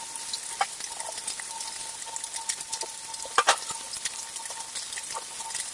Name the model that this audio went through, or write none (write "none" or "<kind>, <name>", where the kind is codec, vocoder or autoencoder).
none